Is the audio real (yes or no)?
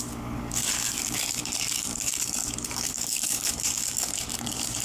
no